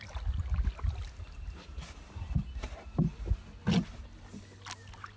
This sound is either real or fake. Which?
real